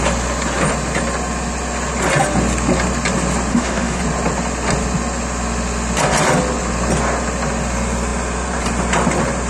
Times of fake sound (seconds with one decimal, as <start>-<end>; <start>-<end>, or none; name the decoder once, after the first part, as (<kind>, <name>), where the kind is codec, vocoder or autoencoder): 3.5-4.0 (autoencoder, DAC-VAE)